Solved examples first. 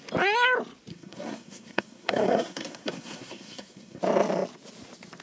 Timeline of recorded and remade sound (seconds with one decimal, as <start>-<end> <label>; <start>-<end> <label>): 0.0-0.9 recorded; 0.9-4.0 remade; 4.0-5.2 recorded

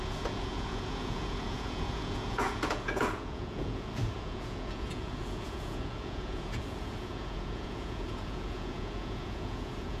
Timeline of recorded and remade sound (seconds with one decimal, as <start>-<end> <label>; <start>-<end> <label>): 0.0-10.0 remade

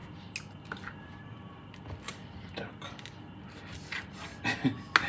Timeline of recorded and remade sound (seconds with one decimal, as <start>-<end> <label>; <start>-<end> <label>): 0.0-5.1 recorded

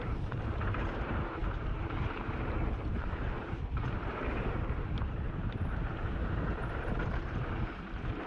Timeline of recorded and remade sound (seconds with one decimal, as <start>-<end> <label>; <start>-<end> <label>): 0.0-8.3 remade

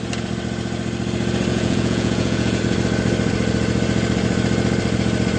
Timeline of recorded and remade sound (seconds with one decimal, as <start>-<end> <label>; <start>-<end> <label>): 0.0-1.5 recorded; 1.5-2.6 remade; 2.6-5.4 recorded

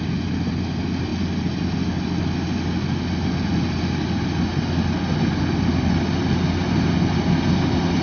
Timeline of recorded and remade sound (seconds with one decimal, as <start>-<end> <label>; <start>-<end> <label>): 0.0-8.0 recorded